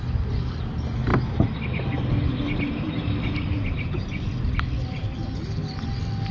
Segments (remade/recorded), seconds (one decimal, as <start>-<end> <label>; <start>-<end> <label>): 0.0-6.3 recorded